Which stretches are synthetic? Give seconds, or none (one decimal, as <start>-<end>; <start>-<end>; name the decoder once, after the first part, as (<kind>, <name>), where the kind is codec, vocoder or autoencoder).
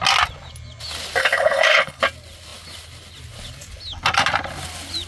1.2-2.0 (codec, HILCodec)